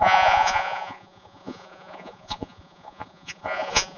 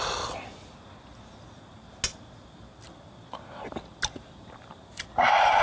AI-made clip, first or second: first